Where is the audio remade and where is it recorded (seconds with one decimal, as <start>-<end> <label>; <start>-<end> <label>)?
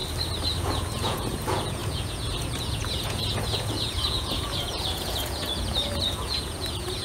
0.0-0.6 recorded; 0.6-7.0 remade